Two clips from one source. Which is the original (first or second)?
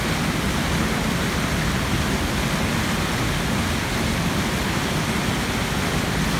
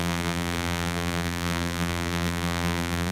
first